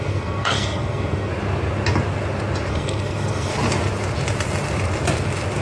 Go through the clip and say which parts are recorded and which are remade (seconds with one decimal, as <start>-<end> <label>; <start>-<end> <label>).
0.0-1.3 remade; 1.3-2.7 recorded; 2.7-3.5 remade; 3.5-5.6 recorded